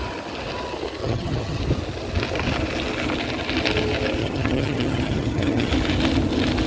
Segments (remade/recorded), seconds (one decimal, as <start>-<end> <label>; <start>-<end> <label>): 0.0-1.0 recorded; 1.0-1.6 remade; 1.6-4.2 recorded; 4.2-5.7 remade; 5.7-6.7 recorded